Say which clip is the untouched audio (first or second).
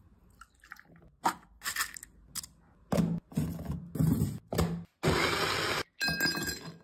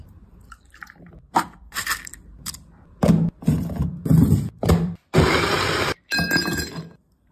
first